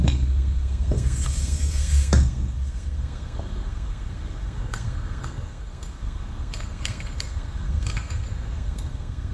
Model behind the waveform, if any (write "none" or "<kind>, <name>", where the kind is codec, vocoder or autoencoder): codec, SNAC